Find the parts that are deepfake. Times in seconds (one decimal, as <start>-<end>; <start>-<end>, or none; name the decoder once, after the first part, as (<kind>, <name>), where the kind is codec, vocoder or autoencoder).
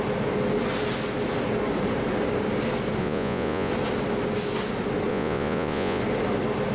3.0-3.7 (vocoder, Vocos); 5.1-6.0